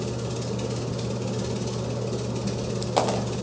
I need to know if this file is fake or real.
real